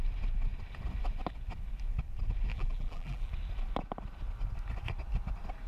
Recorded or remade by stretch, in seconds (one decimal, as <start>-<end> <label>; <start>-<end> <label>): 0.0-2.5 recorded; 2.5-3.3 remade; 3.3-5.7 recorded